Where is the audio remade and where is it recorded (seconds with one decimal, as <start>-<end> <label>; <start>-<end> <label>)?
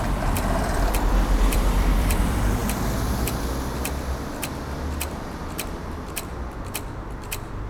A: 0.0-2.6 remade; 2.6-7.0 recorded; 7.0-7.7 remade